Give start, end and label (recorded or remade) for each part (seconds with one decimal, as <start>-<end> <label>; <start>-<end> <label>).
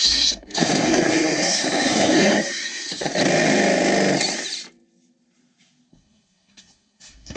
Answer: 0.0-3.1 remade; 3.1-5.9 recorded; 5.9-7.4 remade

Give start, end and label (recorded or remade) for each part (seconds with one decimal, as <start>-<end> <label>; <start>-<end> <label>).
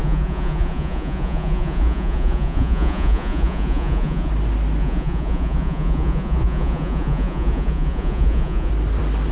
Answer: 0.0-4.3 remade; 4.3-4.8 recorded; 4.8-8.7 remade; 8.7-9.3 recorded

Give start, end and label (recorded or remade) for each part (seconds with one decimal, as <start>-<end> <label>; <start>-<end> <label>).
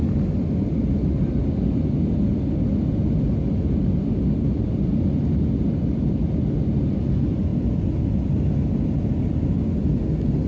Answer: 0.0-10.5 recorded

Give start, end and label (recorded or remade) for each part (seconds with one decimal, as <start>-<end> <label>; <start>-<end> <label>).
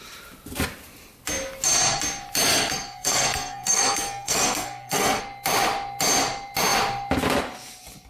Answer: 0.0-2.5 recorded; 2.5-5.2 remade; 5.2-8.1 recorded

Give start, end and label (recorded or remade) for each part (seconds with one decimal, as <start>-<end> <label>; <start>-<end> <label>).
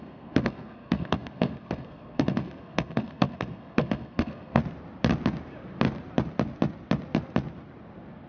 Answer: 0.0-4.6 remade; 4.6-8.3 recorded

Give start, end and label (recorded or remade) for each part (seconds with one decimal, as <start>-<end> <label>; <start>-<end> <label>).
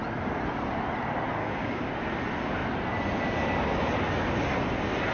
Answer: 0.0-1.4 recorded; 1.4-1.9 remade; 1.9-5.1 recorded